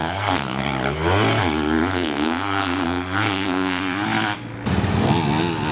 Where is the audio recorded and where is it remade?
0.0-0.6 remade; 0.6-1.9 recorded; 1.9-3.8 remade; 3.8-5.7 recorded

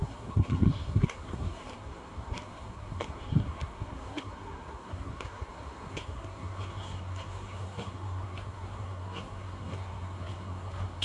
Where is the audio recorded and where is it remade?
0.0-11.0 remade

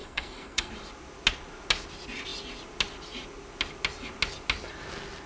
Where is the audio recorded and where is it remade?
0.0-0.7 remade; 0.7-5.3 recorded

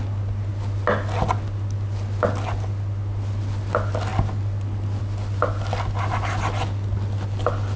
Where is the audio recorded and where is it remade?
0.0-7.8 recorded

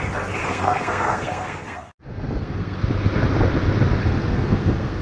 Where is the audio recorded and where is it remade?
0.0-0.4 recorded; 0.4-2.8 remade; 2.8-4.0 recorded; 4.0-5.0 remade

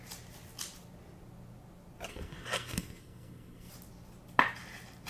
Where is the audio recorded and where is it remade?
0.0-2.1 recorded; 2.1-3.7 remade; 3.7-5.1 recorded

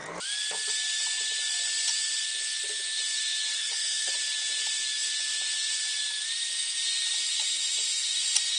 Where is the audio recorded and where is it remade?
0.0-3.5 recorded; 3.5-4.1 remade; 4.1-8.6 recorded

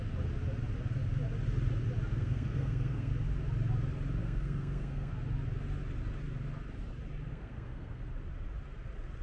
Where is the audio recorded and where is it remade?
0.0-2.1 recorded; 2.1-3.1 remade; 3.1-4.2 recorded; 4.2-5.1 remade; 5.1-7.3 recorded; 7.3-8.0 remade; 8.0-9.2 recorded